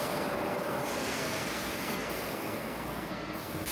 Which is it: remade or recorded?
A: remade